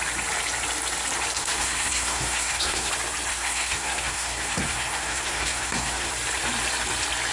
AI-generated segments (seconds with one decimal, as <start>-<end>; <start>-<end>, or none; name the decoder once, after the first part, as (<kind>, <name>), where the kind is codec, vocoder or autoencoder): 1.4-2.9 (codec, SNAC); 3.3-6.1